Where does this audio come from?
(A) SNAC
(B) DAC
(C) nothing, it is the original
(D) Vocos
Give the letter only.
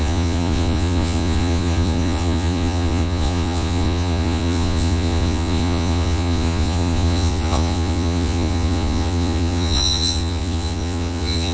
D